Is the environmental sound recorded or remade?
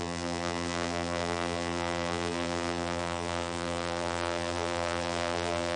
remade